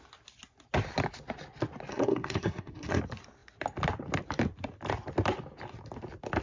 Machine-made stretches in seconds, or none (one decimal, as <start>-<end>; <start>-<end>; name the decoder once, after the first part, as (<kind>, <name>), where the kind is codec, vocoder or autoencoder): 1.9-3.0 (codec, SNAC)